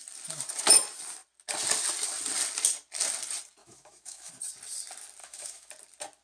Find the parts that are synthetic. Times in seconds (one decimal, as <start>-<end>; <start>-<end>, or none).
3.6-4.3; 5.2-5.7

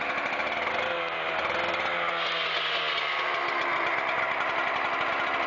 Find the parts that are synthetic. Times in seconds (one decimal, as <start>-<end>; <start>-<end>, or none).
none